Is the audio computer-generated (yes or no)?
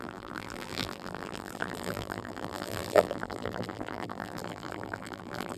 yes